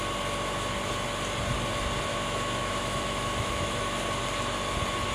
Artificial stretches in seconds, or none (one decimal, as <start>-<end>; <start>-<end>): 2.1-4.0

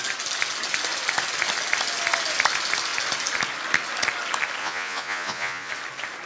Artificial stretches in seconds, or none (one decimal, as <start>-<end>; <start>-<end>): 4.6-5.7

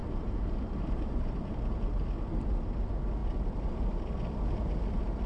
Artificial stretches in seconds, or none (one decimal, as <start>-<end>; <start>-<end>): 0.0-1.5; 3.2-4.1

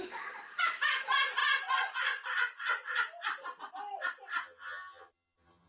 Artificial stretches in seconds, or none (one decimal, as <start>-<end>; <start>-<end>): 4.4-5.7